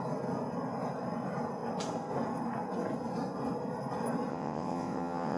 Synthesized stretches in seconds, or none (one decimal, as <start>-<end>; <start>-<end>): 4.3-5.4